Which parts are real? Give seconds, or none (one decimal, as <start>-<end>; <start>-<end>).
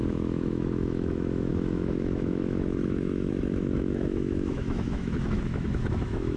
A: none